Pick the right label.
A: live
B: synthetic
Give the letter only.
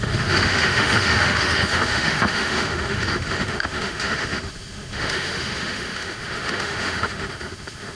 B